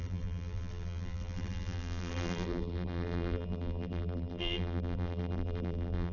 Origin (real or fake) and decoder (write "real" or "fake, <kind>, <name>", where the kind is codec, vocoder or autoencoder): fake, vocoder, BigVGAN v2